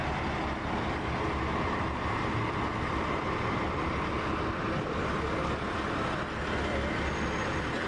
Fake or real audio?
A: real